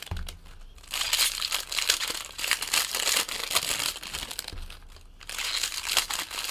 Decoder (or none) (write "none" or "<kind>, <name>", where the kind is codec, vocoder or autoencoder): none